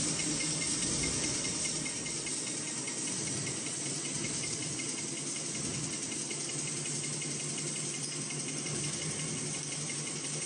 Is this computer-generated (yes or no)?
no